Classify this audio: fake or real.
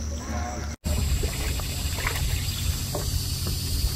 real